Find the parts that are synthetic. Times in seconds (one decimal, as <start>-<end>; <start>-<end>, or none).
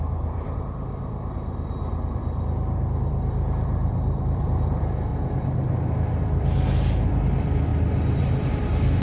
0.0-5.1; 5.7-9.0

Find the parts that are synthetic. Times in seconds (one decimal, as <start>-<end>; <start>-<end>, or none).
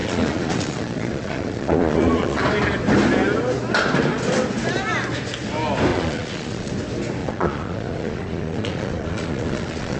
0.0-2.4; 5.9-6.7; 7.2-10.0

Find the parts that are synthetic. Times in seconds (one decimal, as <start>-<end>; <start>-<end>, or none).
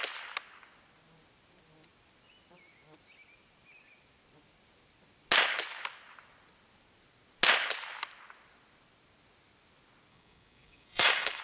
10.1-11.4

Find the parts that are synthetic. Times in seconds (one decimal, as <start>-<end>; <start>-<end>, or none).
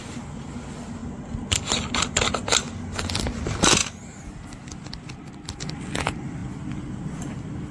none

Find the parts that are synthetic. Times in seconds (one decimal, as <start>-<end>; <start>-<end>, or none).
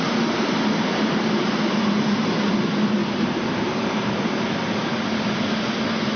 0.9-1.7; 3.0-5.2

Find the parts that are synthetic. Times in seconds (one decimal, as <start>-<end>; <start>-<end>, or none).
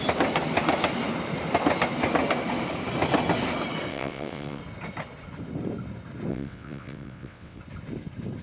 3.9-4.6; 6.3-7.6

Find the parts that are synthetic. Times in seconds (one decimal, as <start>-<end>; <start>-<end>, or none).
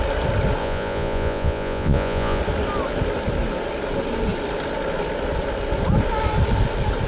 0.6-2.4